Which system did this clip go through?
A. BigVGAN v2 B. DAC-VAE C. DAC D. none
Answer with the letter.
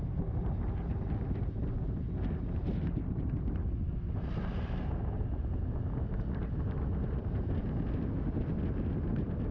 D